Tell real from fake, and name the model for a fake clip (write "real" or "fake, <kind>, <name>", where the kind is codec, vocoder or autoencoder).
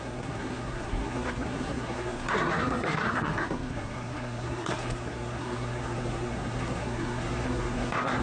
fake, codec, SNAC